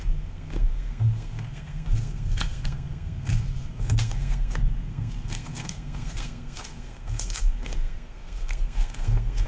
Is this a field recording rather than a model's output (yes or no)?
no